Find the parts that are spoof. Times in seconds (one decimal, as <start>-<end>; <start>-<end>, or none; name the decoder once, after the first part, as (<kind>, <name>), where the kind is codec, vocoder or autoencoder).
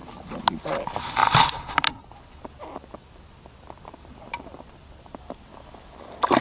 1.2-5.0 (vocoder, BigVGAN v2)